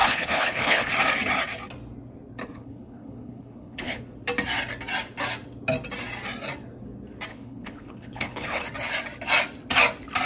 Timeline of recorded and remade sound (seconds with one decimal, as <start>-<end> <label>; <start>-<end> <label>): 0.0-0.9 remade; 0.9-2.4 recorded; 2.4-4.0 remade; 4.0-7.3 recorded; 7.3-8.6 remade; 8.6-10.3 recorded